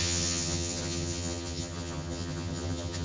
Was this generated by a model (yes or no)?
yes